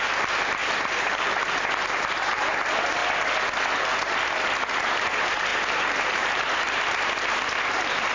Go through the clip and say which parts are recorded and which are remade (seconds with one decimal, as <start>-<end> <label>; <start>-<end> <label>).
0.0-0.6 recorded; 0.6-1.5 remade; 1.5-5.5 recorded; 5.5-7.0 remade; 7.0-8.1 recorded